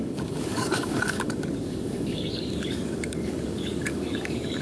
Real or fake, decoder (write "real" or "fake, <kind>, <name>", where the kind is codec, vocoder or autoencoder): fake, codec, DAC